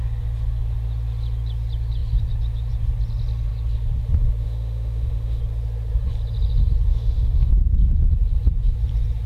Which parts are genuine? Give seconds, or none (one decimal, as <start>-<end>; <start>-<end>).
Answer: 0.0-4.4; 5.4-6.9; 7.5-9.3